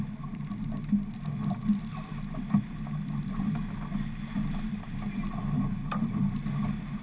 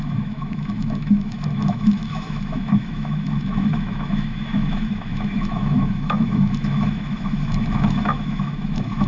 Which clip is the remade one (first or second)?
second